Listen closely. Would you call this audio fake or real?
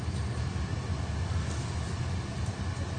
real